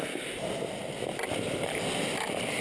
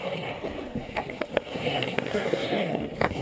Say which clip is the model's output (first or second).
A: second